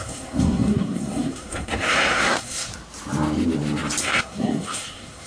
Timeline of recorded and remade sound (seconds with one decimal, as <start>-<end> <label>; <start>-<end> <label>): 0.0-2.7 remade; 2.7-4.0 recorded; 4.0-5.3 remade